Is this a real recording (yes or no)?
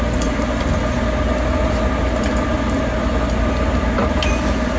yes